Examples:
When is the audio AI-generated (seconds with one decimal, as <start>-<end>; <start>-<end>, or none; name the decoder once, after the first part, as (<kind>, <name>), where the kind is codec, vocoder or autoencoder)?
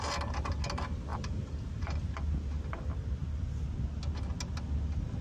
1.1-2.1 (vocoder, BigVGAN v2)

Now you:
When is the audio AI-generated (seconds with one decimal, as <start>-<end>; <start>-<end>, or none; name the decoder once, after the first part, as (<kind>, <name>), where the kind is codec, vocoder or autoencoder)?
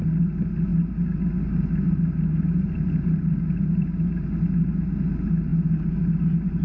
none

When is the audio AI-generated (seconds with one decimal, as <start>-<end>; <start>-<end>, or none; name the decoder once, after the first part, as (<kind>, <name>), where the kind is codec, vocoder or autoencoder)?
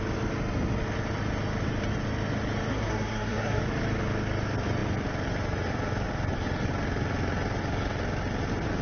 2.7-3.6 (codec, SNAC)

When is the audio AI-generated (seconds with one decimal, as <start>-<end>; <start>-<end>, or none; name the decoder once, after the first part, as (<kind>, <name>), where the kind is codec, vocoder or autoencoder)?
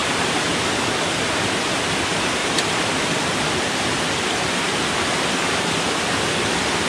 0.0-0.8 (vocoder, BigVGAN v2); 2.4-6.5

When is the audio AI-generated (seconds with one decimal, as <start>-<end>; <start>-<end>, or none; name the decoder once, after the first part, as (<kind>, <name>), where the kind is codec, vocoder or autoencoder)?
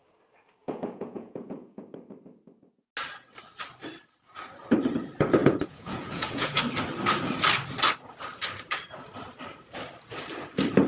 0.6-1.8 (vocoder, Vocos); 5.4-6.6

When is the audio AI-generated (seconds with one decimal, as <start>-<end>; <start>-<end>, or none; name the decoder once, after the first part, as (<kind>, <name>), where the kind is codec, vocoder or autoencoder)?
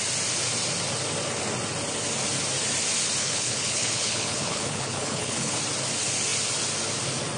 3.2-5.6 (codec, HILCodec)